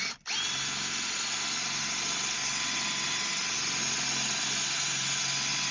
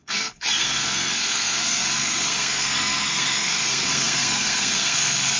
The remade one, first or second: second